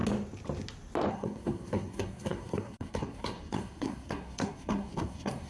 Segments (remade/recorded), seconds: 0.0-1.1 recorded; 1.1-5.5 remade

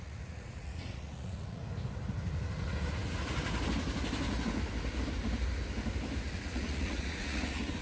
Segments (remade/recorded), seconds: 0.0-1.6 remade; 1.6-6.3 recorded; 6.3-7.8 remade

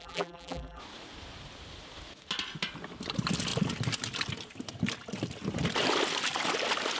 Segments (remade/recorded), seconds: 0.0-0.8 remade; 0.8-7.0 recorded

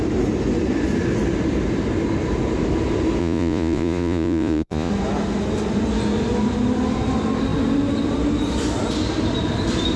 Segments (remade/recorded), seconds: 0.0-3.2 recorded; 3.2-4.9 remade; 4.9-10.0 recorded